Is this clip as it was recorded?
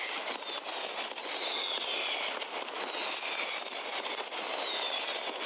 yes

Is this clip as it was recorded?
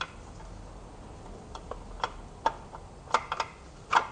yes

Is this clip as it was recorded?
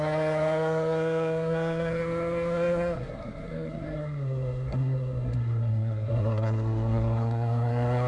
no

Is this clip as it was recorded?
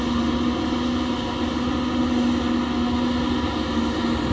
yes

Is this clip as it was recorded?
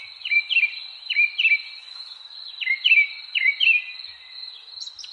yes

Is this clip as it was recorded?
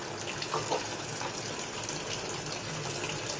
yes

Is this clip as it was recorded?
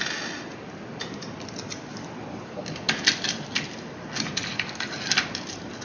yes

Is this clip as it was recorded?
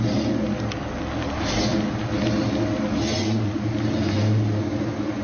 yes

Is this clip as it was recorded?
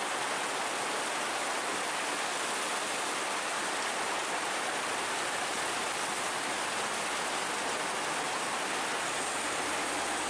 yes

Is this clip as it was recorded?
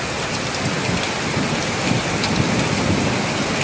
yes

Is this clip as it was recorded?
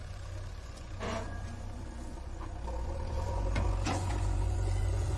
no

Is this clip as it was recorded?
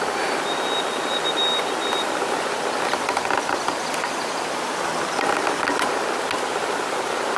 yes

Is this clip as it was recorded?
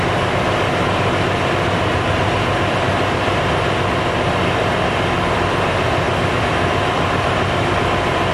no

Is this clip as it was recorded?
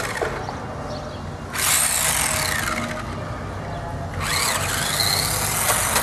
yes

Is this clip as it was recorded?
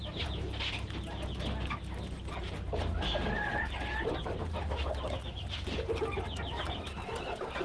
yes